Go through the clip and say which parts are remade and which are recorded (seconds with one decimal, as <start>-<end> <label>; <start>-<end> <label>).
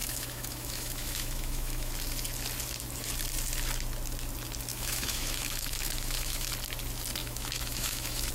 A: 0.0-1.9 remade; 1.9-4.7 recorded; 4.7-6.5 remade; 6.5-7.2 recorded; 7.2-8.3 remade